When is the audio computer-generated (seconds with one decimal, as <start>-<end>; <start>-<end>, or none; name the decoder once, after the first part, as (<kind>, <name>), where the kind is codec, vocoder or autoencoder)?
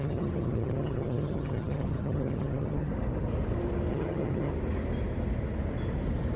0.0-2.9 (vocoder, HiFi-GAN); 3.9-4.5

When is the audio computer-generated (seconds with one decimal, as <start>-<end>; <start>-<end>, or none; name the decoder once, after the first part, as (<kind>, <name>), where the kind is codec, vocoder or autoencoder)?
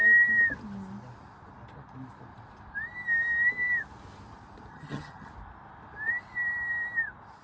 4.7-5.3 (vocoder, HiFi-GAN)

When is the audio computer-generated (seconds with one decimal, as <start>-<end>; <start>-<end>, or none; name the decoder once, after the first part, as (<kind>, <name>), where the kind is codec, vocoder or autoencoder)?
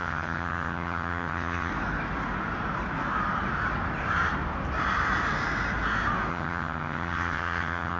0.0-1.7 (vocoder, HiFi-GAN); 6.3-8.0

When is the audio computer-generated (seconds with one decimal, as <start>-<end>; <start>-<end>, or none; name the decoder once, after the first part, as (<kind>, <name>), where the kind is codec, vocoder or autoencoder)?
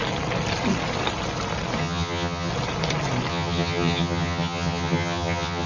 1.8-2.5 (vocoder, HiFi-GAN); 3.3-5.7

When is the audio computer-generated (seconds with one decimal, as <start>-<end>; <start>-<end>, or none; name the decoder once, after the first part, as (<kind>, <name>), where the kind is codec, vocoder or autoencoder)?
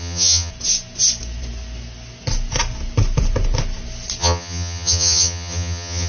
0.0-0.5 (vocoder, HiFi-GAN); 4.2-6.1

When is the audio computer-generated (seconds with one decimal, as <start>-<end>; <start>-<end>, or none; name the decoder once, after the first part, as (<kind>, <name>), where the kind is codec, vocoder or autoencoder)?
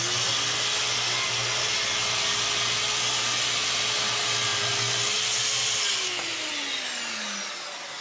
none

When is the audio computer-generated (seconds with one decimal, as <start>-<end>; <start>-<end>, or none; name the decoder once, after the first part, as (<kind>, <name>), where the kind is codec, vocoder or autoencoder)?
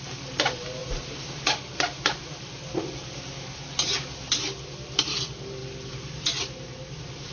none